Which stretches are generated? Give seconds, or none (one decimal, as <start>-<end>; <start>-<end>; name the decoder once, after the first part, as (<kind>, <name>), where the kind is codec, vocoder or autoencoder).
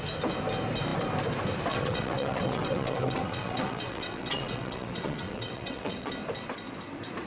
1.7-6.1 (vocoder, WaveNeXt)